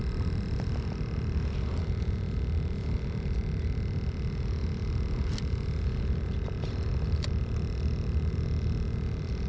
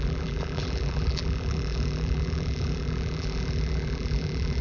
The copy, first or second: second